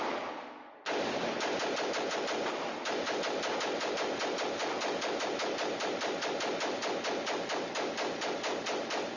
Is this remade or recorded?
recorded